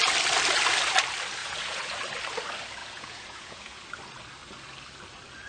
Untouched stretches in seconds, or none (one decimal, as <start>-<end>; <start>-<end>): 0.0-1.4; 1.9-2.8; 3.8-5.5